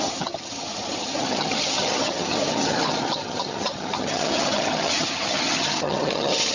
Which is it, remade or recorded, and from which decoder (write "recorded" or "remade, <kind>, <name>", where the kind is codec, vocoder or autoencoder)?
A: remade, vocoder, HiFi-GAN